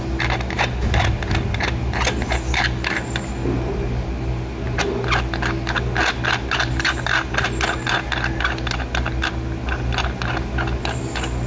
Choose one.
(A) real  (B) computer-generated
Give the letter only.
A